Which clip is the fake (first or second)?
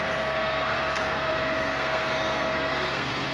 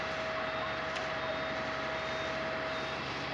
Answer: first